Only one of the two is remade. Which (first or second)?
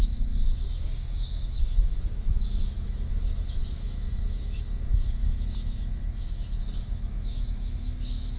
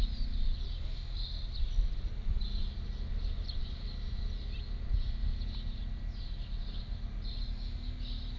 first